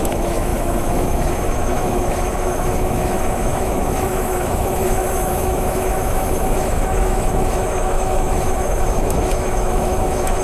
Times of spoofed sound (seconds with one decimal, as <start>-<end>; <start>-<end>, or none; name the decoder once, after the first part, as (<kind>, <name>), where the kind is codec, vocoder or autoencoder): 0.0-10.4 (autoencoder, DAC-VAE)